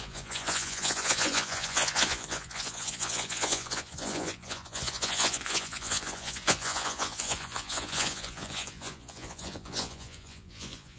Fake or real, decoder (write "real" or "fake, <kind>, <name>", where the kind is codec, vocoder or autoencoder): fake, vocoder, Vocos